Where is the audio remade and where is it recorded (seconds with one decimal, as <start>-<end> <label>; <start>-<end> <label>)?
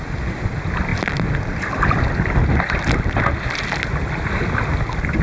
0.0-5.2 recorded